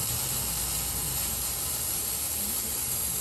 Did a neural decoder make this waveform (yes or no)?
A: no